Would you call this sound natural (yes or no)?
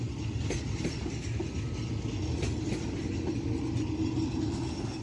yes